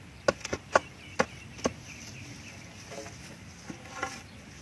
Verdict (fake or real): real